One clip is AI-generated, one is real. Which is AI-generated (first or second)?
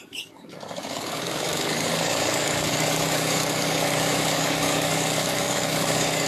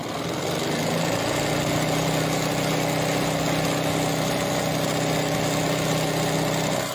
first